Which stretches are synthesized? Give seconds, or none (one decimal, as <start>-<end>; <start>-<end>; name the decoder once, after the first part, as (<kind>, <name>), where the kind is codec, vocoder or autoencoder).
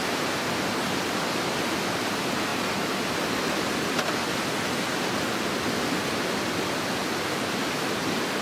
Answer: none